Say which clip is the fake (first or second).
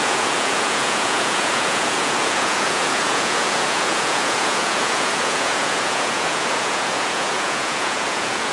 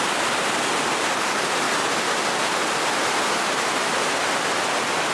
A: first